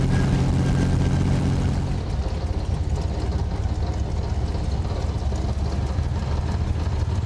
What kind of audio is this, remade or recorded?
recorded